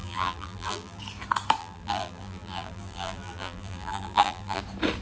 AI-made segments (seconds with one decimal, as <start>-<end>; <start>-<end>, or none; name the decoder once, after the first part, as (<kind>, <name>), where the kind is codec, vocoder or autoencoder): 0.0-1.0 (vocoder, BigVGAN v2); 1.6-4.6